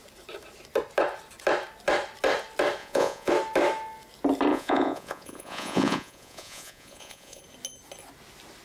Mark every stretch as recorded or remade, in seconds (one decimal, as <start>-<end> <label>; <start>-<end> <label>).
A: 0.0-2.8 recorded; 2.8-3.3 remade; 3.3-4.5 recorded; 4.5-7.4 remade; 7.4-8.6 recorded